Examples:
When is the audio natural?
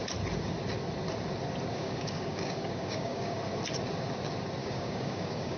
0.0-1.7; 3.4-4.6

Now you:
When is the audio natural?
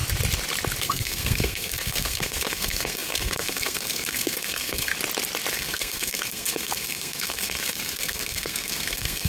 0.0-0.8; 4.9-5.5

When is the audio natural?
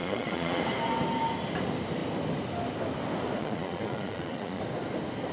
0.6-3.4; 4.6-5.3